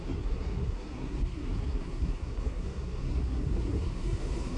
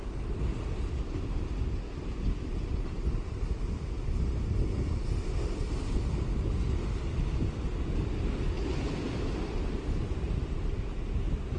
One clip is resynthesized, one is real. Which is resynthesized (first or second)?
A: first